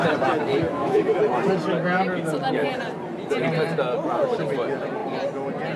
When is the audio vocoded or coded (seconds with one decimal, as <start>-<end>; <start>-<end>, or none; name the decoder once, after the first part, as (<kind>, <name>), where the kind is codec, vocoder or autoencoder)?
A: 0.5-1.2 (autoencoder, DAC-VAE)